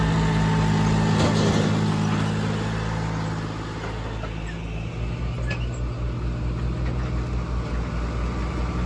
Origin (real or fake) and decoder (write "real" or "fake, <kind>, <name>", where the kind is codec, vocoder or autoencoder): real